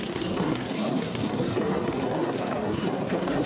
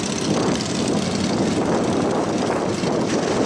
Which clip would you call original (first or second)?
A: second